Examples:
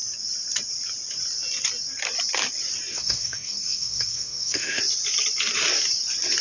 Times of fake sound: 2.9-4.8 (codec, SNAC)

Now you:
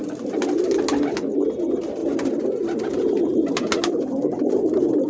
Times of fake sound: none

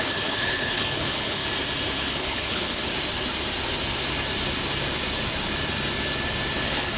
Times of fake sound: 0.0-1.4 (codec, HILCodec); 2.1-2.9; 6.6-7.0